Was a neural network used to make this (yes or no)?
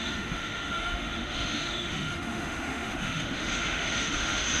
yes